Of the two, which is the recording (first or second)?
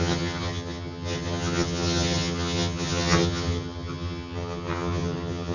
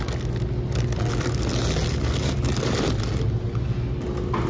second